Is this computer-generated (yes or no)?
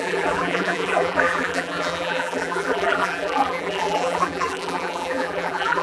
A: yes